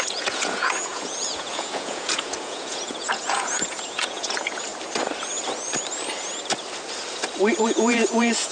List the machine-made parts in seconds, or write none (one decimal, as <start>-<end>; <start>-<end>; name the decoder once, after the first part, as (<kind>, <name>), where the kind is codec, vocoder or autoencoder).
0.0-4.7 (vocoder, Vocos); 7.6-8.5